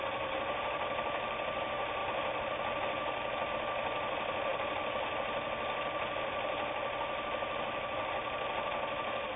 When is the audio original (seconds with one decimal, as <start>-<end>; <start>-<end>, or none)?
0.0-9.4